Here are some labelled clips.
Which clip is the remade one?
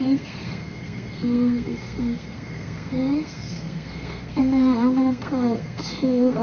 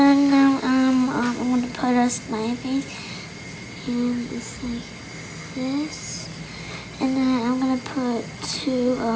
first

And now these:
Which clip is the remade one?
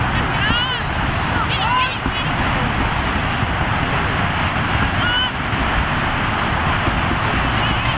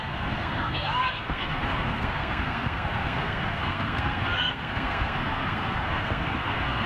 second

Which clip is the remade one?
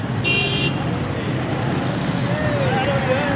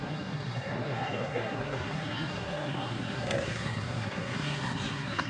second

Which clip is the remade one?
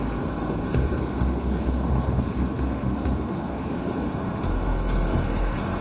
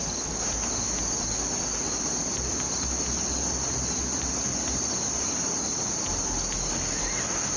first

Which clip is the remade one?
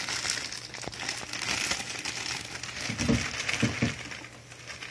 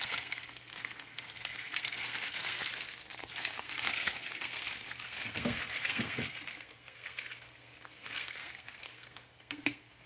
second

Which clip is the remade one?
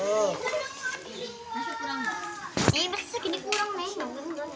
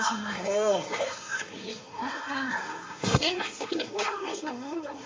second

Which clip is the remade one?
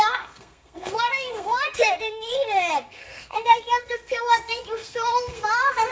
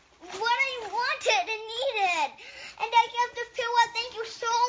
first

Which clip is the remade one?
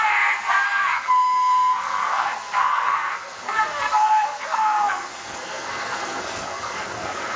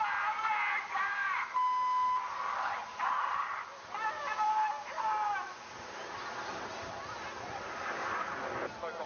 first